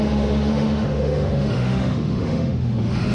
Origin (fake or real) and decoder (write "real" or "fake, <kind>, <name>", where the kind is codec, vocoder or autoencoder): fake, autoencoder, DAC-VAE